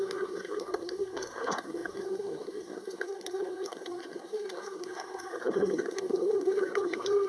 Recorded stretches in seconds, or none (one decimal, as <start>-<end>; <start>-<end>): none